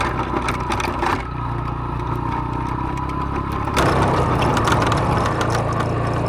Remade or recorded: recorded